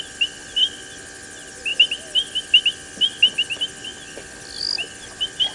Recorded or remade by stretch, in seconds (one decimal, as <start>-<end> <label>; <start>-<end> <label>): 0.0-5.5 recorded